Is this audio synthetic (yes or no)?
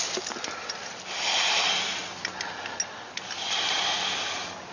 no